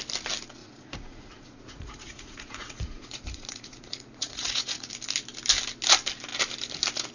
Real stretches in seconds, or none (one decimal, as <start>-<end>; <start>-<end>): 0.0-0.6; 4.9-7.1